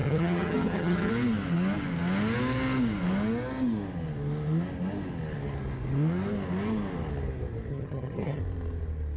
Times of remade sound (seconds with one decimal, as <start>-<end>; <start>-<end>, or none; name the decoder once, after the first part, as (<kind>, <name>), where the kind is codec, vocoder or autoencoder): 0.0-1.1 (vocoder, HiFi-GAN); 7.7-8.4